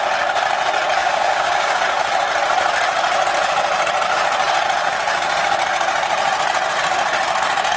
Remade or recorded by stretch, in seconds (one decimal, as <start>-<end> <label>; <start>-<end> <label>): 0.0-1.0 recorded; 1.0-1.8 remade; 1.8-7.8 recorded